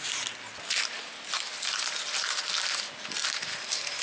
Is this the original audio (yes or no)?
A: yes